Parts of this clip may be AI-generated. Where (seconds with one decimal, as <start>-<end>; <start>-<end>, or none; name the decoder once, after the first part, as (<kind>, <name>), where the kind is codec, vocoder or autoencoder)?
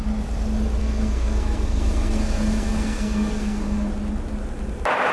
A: 0.8-3.9 (codec, SNAC)